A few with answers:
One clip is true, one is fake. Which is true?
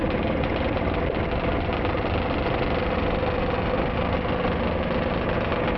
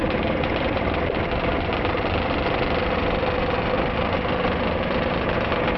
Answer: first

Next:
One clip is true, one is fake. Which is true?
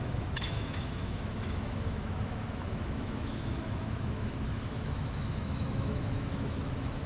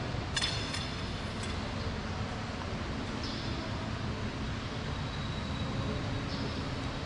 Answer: second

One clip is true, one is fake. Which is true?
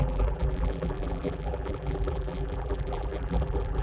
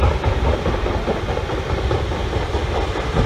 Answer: second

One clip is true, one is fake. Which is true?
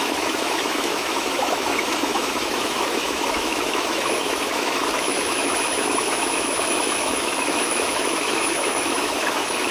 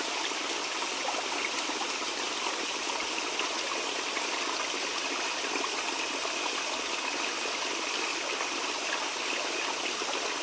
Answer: second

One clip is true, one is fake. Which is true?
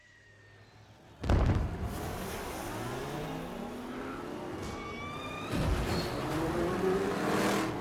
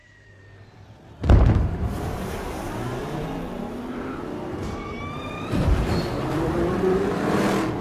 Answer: first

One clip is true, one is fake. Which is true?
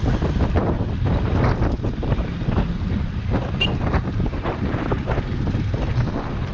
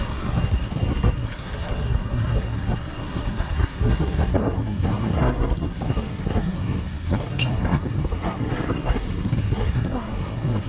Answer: first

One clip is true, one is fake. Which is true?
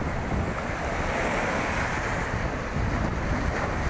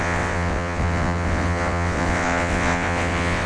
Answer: first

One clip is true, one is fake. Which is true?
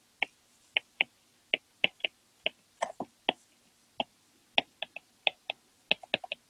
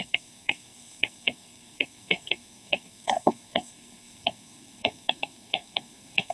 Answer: first